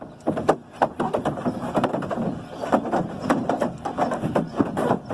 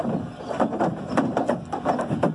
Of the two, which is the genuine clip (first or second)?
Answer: second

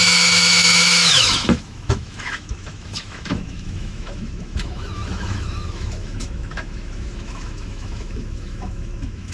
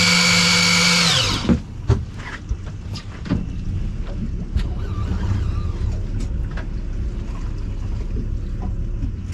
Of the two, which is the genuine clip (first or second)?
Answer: second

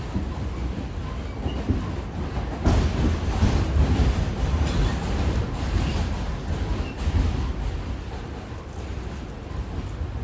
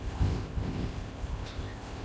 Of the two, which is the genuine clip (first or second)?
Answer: first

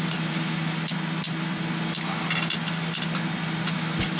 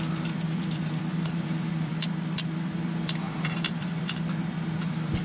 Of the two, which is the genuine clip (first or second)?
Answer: first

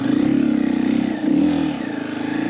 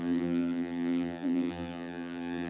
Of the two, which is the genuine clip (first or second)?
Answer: first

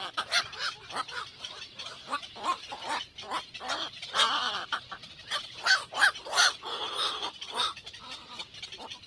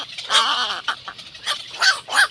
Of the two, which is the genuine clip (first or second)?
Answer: second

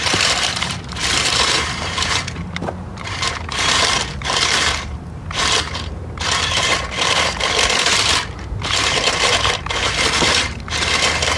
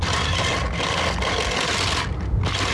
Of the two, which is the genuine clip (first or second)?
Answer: second